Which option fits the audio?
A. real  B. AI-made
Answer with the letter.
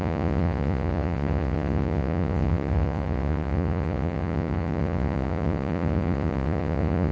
B